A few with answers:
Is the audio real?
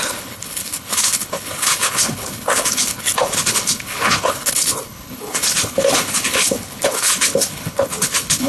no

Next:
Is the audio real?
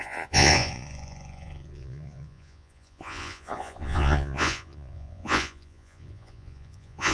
no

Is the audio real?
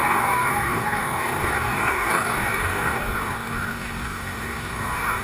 no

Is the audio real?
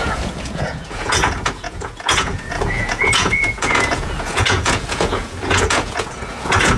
no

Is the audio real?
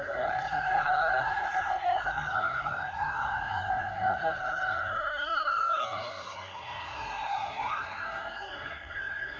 no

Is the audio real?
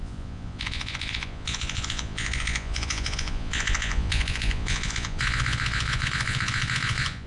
no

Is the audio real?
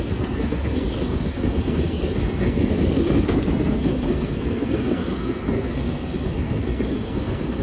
no